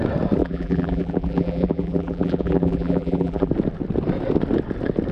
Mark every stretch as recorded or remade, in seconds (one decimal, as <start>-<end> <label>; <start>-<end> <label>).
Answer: 0.0-0.4 recorded; 0.4-3.5 remade; 3.5-5.1 recorded